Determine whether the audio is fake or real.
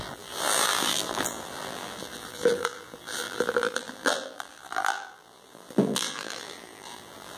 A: fake